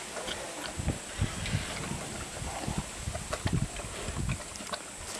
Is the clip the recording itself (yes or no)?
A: yes